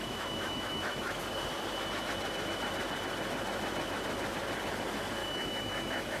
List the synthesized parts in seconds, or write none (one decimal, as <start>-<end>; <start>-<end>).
0.0-1.2; 5.2-6.2